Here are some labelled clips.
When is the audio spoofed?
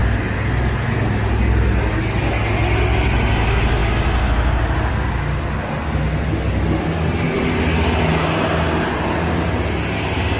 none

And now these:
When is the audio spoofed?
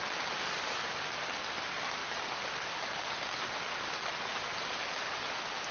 none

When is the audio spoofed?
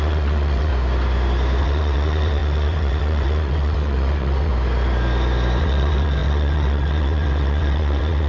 0.0-0.7 (vocoder, WaveNeXt); 1.6-4.5; 5.6-8.3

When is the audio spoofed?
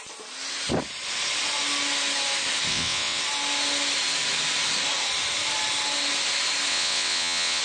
2.7-3.2 (vocoder, WaveNeXt); 6.7-7.6